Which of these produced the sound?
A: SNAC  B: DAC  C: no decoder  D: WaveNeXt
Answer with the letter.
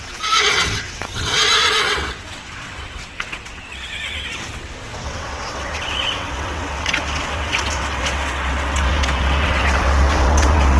D